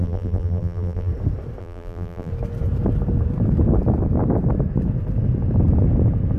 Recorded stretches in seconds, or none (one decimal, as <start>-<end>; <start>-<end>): 1.1-1.6; 2.3-6.4